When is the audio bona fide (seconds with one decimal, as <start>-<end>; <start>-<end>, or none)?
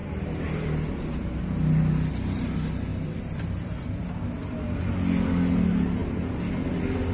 0.0-2.9; 4.9-7.1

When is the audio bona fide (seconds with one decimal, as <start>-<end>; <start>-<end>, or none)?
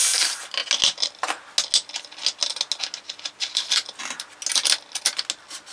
0.0-5.7